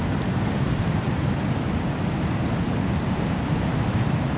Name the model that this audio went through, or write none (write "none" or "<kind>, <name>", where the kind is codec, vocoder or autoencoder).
none